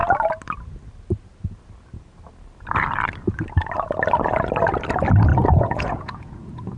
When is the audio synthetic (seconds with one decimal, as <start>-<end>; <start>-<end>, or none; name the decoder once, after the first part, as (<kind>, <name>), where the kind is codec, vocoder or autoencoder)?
5.3-6.8 (vocoder, Vocos)